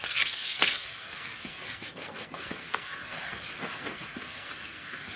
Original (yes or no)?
no